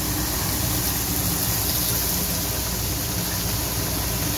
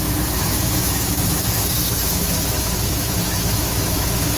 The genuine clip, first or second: first